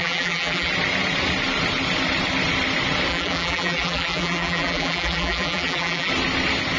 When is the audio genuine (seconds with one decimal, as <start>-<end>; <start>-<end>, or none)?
0.7-3.1; 6.1-6.8